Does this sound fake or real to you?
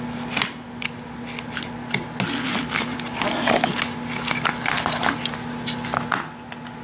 real